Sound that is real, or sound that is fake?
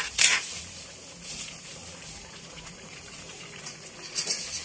fake